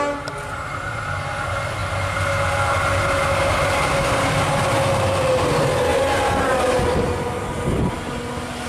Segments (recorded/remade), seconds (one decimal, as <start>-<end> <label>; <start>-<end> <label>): 0.0-8.7 recorded